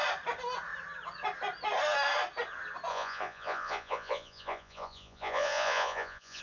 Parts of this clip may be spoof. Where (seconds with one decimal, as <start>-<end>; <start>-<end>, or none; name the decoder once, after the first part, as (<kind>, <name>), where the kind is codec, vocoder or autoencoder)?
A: 2.9-6.4 (vocoder, Vocos)